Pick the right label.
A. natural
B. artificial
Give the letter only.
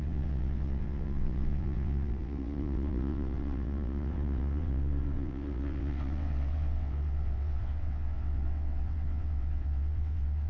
B